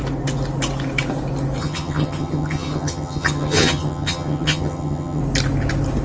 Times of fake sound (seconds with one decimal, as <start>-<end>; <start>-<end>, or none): 1.6-5.2